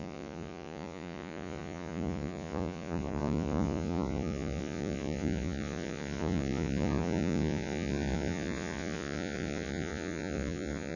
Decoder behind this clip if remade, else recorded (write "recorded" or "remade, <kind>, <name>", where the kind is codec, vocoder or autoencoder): remade, vocoder, Vocos